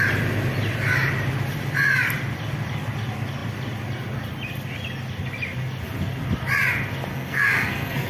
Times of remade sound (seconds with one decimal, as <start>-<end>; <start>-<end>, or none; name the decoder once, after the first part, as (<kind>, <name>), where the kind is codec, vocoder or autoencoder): 7.1-8.1 (codec, SNAC)